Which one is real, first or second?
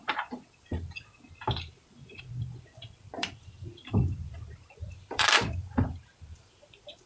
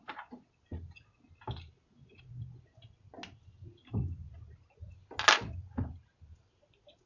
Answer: second